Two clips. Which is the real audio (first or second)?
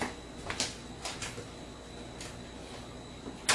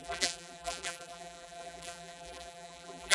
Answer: first